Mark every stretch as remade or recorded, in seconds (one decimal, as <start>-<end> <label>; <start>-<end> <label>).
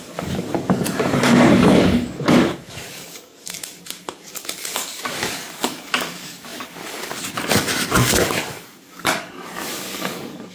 0.0-10.5 remade